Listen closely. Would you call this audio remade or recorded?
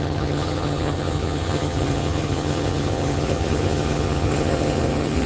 remade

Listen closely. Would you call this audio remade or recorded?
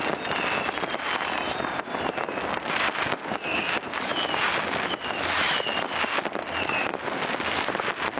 recorded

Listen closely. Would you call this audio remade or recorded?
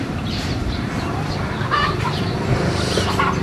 remade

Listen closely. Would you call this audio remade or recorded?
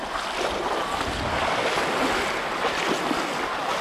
recorded